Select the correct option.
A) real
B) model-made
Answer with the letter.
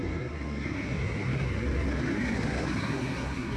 B